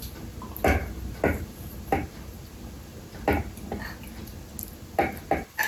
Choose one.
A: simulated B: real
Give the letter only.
B